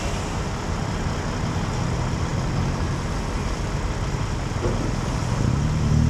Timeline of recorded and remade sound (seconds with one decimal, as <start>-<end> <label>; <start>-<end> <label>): 0.0-6.1 recorded